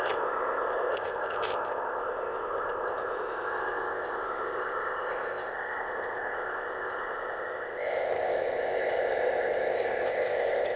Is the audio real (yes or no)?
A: no